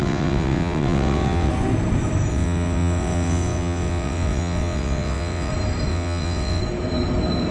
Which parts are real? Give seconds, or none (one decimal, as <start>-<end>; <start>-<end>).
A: 1.5-2.3; 5.5-5.9; 6.6-7.5